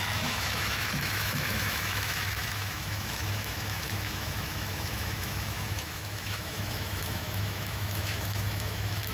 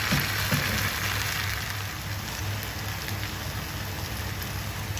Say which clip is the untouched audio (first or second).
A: second